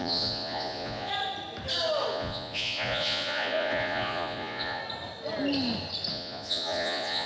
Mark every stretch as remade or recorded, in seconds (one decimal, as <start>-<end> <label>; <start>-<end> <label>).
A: 0.0-1.1 remade; 1.1-2.1 recorded; 2.1-4.8 remade; 4.8-6.1 recorded; 6.1-7.3 remade